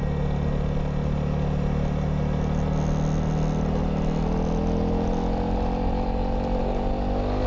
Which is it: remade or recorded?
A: recorded